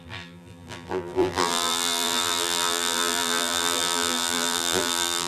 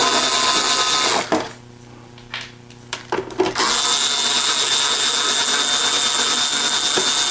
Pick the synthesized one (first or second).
first